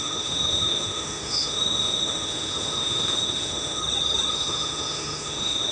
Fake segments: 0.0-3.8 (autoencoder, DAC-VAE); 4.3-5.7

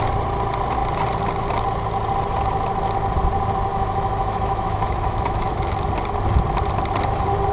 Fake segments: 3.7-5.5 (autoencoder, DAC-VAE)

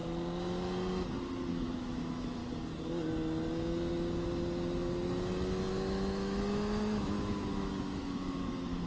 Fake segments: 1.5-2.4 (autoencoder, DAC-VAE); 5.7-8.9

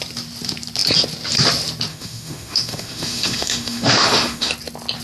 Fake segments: 1.9-4.5 (autoencoder, DAC-VAE)

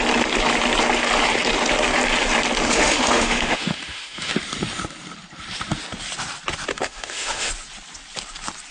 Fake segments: 2.7-4.3 (autoencoder, DAC-VAE); 6.7-7.5